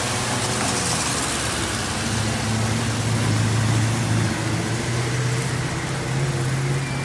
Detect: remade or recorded recorded